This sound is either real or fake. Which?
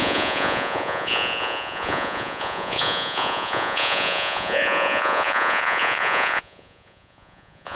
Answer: fake